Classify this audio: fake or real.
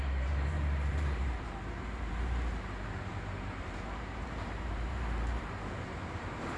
fake